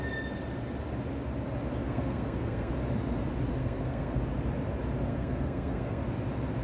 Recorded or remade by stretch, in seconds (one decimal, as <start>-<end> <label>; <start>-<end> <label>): 0.0-1.8 recorded; 1.8-2.7 remade; 2.7-3.6 recorded; 3.6-4.2 remade; 4.2-5.1 recorded; 5.1-6.0 remade; 6.0-6.6 recorded